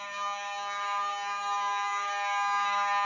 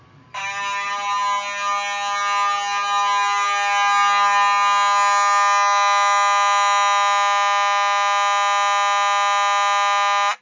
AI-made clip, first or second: first